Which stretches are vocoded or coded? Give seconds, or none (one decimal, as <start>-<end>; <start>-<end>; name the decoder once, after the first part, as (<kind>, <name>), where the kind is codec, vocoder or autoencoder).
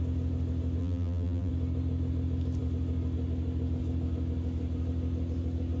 0.8-1.5 (vocoder, BigVGAN v2)